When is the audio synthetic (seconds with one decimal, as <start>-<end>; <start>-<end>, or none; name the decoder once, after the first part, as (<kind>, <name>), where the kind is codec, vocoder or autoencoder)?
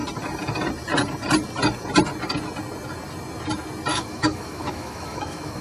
3.9-5.6 (autoencoder, DAC-VAE)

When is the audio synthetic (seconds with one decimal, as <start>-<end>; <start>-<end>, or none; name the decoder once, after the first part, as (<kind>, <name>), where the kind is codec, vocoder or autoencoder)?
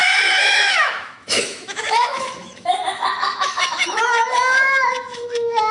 0.0-5.7 (autoencoder, DAC-VAE)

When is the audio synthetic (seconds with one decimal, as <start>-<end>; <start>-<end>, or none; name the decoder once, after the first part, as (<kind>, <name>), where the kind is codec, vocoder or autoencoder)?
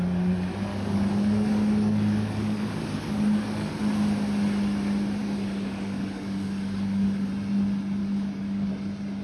0.7-3.8 (codec, DAC); 5.2-7.3; 8.0-8.7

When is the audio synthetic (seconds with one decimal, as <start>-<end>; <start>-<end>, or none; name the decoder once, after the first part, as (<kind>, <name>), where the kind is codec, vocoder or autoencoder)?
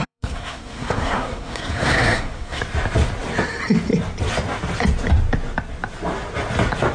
0.0-2.6 (codec, SNAC)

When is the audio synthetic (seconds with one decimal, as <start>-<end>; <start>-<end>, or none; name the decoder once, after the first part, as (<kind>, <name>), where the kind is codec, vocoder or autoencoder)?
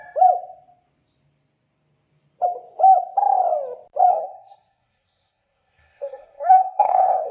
4.1-7.3 (codec, SNAC)